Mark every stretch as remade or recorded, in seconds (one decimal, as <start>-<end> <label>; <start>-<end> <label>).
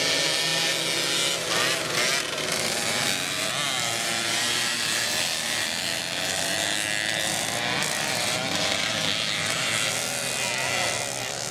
0.0-11.5 recorded